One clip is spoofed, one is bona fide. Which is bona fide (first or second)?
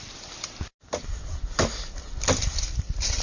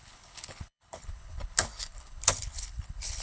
first